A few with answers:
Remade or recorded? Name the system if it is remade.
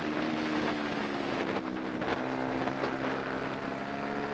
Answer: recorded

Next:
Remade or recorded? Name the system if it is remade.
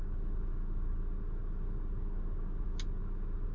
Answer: recorded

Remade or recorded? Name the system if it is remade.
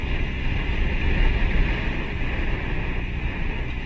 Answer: recorded